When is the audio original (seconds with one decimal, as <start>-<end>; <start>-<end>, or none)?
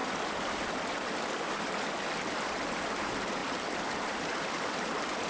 0.0-5.3